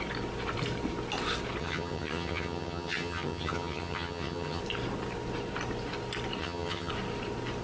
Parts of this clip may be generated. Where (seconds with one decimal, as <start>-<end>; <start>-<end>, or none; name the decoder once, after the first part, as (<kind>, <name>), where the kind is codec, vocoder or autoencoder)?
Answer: 1.6-4.6 (vocoder, HiFi-GAN); 6.4-6.9